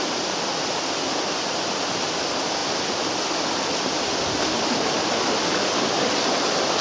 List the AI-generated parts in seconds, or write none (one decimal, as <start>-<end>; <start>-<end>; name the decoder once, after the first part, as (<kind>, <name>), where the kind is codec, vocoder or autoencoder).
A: none